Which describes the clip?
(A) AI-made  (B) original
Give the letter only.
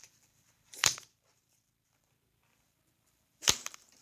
A